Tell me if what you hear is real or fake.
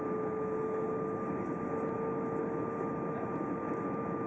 real